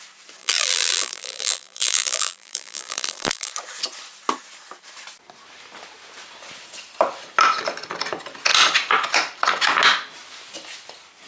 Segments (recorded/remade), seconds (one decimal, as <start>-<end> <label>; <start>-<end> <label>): 0.0-0.4 recorded; 0.4-3.5 remade; 3.5-11.3 recorded